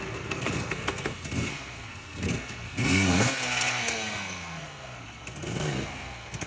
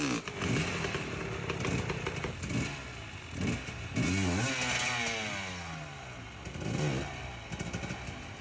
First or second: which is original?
second